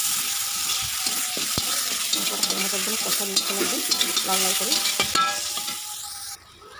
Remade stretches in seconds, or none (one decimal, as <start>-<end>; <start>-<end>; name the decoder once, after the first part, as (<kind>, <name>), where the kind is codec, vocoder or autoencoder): 0.0-2.4 (vocoder, BigVGAN v2)